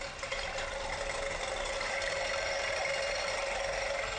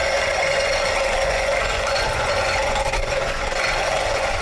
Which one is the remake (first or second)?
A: second